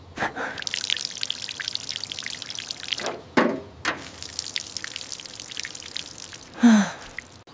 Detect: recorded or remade recorded